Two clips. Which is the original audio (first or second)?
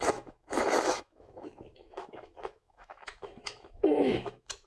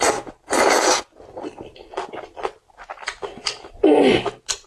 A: second